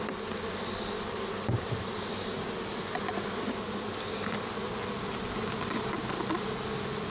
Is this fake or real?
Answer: real